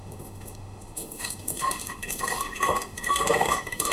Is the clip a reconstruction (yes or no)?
yes